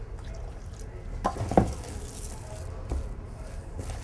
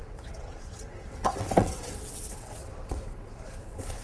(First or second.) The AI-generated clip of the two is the second